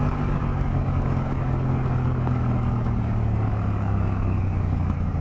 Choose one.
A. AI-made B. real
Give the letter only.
A